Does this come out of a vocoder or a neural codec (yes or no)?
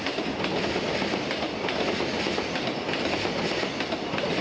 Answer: no